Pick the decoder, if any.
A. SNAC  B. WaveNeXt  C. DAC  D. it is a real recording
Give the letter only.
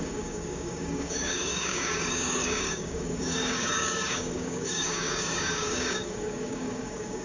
C